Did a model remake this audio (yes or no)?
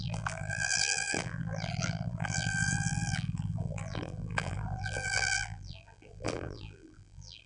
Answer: yes